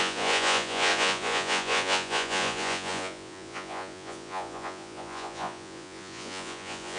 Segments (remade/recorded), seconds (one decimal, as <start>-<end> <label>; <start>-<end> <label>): 0.0-7.0 remade

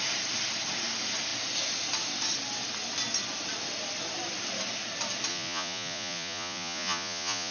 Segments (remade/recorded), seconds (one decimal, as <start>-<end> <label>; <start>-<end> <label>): 0.0-5.3 recorded; 5.3-7.5 remade

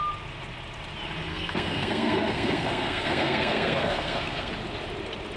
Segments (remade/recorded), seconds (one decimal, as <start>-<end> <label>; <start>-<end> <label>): 0.0-1.3 recorded; 1.3-4.5 remade; 4.5-5.4 recorded

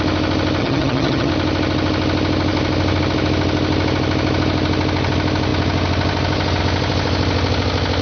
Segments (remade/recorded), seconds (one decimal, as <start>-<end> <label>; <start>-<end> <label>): 0.0-0.6 recorded; 0.6-1.3 remade; 1.3-8.0 recorded

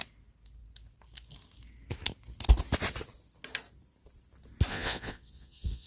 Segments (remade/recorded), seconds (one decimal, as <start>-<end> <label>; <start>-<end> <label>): 0.0-4.7 recorded; 4.7-5.9 remade

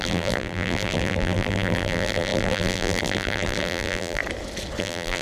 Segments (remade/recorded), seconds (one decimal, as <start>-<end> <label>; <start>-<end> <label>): 0.0-4.2 remade; 4.2-4.8 recorded; 4.8-5.2 remade

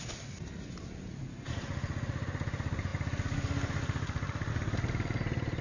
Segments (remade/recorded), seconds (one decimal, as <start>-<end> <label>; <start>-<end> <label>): 0.0-5.6 recorded